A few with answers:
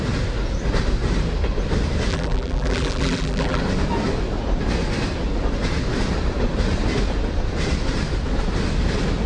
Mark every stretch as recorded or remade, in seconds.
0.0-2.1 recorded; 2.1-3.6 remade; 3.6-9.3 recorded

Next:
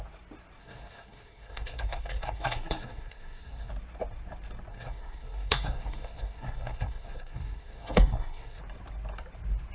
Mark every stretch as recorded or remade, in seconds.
0.0-0.6 recorded; 0.6-3.7 remade; 3.7-4.7 recorded; 4.7-8.6 remade; 8.6-9.7 recorded

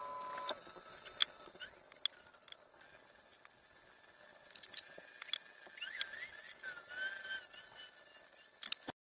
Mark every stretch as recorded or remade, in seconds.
0.0-4.3 recorded; 4.3-5.1 remade; 5.1-9.1 recorded

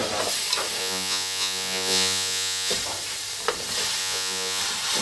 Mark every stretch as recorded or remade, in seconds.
0.0-0.8 recorded; 0.8-2.7 remade; 2.7-4.0 recorded; 4.0-4.6 remade; 4.6-5.0 recorded

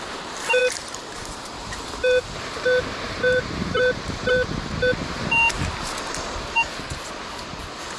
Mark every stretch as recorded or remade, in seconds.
0.0-0.6 recorded; 0.6-4.7 remade; 4.7-8.0 recorded

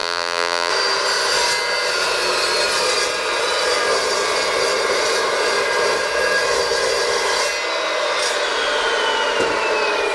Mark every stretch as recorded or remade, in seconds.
0.0-0.7 remade; 0.7-10.1 recorded

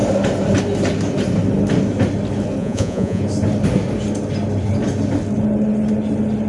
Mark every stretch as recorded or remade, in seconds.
0.0-2.6 recorded; 2.6-3.2 remade; 3.2-6.5 recorded